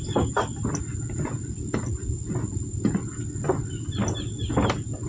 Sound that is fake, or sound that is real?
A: real